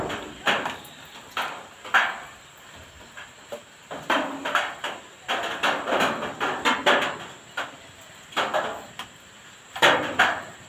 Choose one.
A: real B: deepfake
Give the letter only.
A